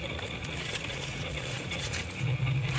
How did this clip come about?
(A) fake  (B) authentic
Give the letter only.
A